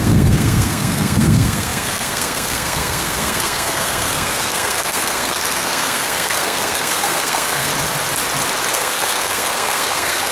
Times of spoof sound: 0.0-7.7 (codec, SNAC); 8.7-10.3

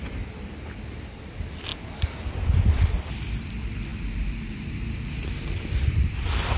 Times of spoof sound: 0.0-1.7 (vocoder, BigVGAN v2); 2.5-6.6